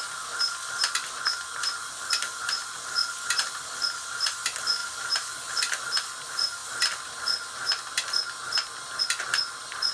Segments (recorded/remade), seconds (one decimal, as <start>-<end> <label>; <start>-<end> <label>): 0.0-4.8 recorded; 4.8-5.6 remade; 5.6-9.9 recorded